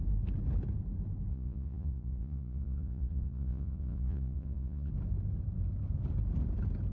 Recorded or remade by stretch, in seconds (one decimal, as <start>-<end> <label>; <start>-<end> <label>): 0.0-1.3 recorded; 1.3-4.9 remade; 4.9-6.9 recorded